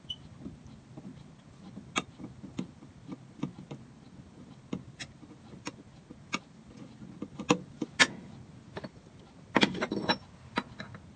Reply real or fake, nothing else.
real